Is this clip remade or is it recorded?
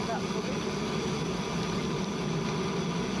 recorded